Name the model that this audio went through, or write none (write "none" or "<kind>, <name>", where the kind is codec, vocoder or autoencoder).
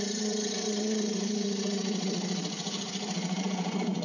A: vocoder, Vocos